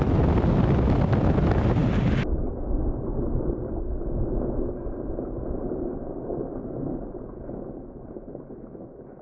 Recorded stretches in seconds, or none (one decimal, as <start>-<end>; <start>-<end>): 0.0-9.2